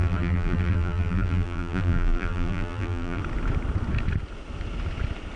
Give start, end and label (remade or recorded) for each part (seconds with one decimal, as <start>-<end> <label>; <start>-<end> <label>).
0.0-3.2 remade; 3.2-5.4 recorded